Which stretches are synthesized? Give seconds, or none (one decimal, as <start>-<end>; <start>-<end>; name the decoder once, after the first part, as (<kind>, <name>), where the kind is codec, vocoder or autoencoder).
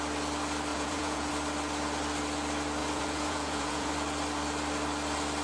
0.7-1.3 (vocoder, Vocos); 2.8-3.9